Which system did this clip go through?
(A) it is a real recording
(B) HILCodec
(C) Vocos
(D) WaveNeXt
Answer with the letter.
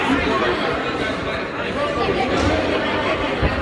A